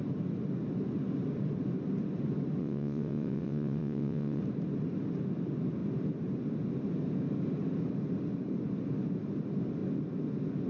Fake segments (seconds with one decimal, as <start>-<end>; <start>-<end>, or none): 2.6-4.4